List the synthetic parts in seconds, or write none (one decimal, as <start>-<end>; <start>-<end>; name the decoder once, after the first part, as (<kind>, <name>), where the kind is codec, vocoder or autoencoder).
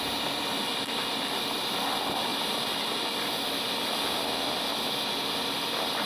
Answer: none